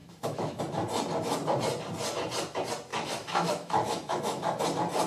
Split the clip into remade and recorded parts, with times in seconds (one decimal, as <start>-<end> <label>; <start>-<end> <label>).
0.0-0.6 remade; 0.6-2.9 recorded; 2.9-4.6 remade; 4.6-5.1 recorded